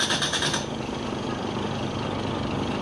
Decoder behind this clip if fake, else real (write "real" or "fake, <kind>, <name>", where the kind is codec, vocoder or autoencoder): fake, vocoder, BigVGAN v2